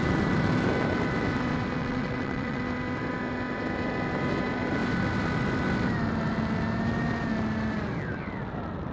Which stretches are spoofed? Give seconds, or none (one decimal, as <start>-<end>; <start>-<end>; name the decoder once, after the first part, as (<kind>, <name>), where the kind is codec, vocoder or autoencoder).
1.8-2.6 (vocoder, WaveNeXt)